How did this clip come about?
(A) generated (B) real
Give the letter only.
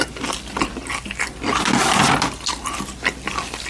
B